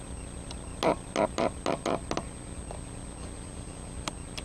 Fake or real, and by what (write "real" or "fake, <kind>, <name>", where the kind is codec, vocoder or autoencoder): real